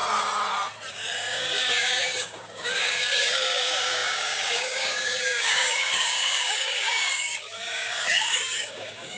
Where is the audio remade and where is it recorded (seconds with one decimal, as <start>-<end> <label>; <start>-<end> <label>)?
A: 0.0-0.9 recorded; 0.9-9.2 remade